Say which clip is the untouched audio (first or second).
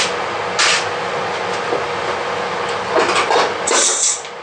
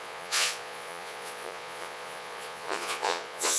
first